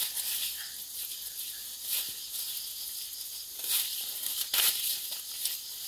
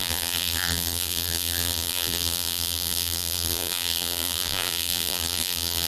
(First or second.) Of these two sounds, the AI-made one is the second